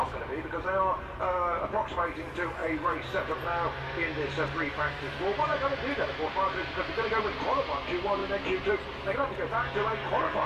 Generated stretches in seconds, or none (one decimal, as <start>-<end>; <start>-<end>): 2.6-3.5